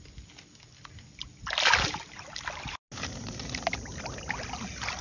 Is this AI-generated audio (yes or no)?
no